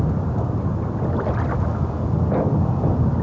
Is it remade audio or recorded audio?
recorded